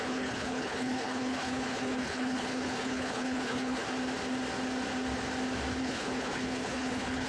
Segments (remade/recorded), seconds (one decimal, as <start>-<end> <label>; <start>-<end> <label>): 0.0-3.8 remade; 3.8-5.8 recorded; 5.8-7.3 remade